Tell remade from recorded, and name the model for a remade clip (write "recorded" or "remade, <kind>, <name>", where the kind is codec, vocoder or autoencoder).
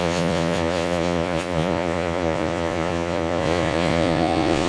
remade, vocoder, Vocos